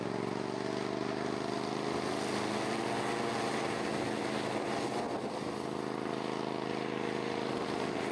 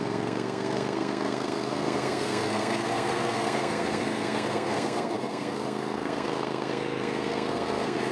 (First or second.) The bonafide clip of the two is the first